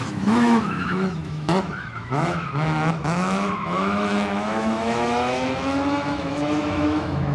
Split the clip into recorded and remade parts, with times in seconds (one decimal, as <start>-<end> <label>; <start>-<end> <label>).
0.0-7.3 remade